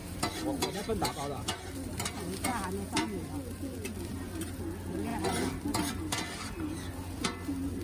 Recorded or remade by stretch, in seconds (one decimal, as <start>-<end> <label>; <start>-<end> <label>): 0.0-2.1 remade; 2.1-5.1 recorded; 5.1-5.9 remade; 5.9-7.8 recorded